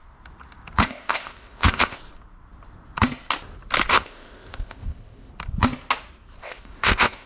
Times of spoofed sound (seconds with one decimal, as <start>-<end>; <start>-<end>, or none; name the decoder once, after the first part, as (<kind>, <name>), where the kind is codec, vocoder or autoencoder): 0.8-2.0 (codec, ZipCodec); 3.9-5.3; 6.4-7.3